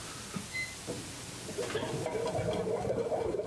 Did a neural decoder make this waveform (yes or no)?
no